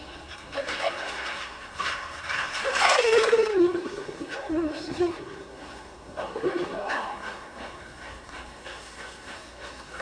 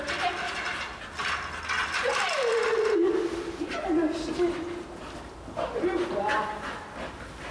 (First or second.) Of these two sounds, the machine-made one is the first